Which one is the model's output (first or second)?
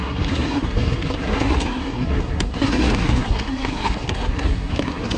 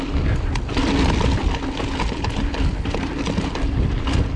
first